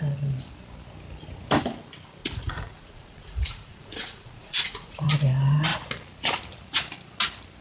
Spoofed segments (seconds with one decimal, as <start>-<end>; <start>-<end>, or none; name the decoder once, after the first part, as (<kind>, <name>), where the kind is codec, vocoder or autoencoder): 2.2-5.1 (vocoder, Vocos)